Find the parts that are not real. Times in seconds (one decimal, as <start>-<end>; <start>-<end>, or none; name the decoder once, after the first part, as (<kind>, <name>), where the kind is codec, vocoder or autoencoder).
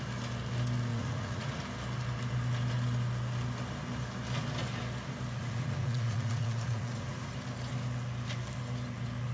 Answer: 0.9-1.6 (vocoder, Vocos); 5.4-7.3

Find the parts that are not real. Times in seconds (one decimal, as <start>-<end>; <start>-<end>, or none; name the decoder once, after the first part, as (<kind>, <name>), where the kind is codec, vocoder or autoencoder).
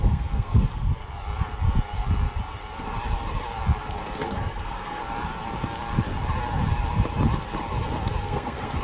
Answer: 0.0-0.9 (codec, SNAC); 4.2-5.0; 8.2-8.8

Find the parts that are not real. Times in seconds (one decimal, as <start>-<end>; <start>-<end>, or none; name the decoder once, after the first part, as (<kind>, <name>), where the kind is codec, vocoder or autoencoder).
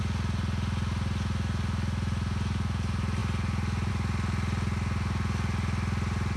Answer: none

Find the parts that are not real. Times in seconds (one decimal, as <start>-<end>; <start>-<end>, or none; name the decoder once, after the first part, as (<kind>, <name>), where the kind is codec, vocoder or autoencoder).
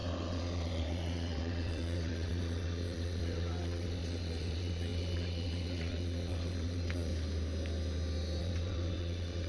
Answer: 0.0-7.1 (vocoder, WaveNeXt); 8.4-9.5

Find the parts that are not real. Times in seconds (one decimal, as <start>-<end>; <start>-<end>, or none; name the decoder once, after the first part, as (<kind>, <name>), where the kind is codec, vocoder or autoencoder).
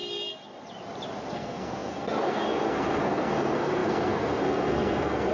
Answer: 1.3-5.3 (codec, SNAC)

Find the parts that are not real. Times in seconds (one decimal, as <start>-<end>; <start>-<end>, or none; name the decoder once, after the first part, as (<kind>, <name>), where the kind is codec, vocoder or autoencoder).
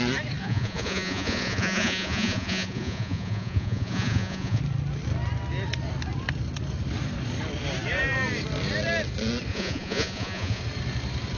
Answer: 0.4-4.6 (vocoder, Vocos); 9.5-10.6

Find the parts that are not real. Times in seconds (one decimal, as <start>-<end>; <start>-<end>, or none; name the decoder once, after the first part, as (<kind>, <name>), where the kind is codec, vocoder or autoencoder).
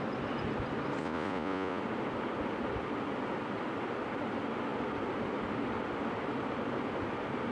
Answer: 1.0-1.8 (vocoder, Vocos)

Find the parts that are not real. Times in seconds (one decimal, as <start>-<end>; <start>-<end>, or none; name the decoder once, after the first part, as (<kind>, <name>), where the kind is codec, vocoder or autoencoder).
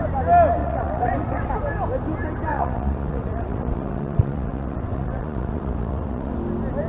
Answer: 0.6-1.5 (vocoder, WaveNeXt); 2.5-6.3